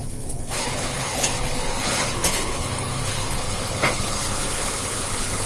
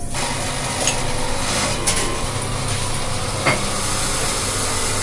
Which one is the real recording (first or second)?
second